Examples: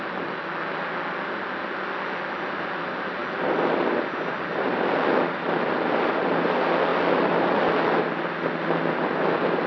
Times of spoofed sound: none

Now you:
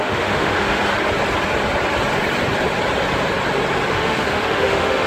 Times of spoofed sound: 0.0-0.8 (autoencoder, DAC-VAE); 3.9-5.1

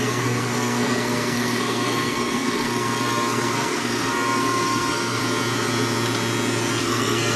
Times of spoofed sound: 0.0-5.2 (codec, SNAC); 6.8-7.4

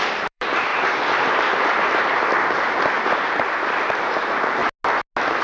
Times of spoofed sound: 0.0-0.7 (vocoder, BigVGAN v2); 3.9-4.6

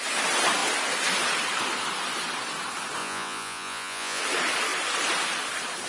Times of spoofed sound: 3.0-4.2 (vocoder, Vocos)

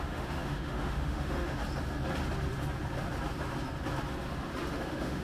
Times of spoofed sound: 0.0-1.6 (autoencoder, DAC-VAE); 4.7-5.2

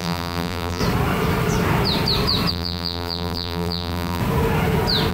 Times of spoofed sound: 0.0-0.8 (vocoder, BigVGAN v2); 2.5-4.2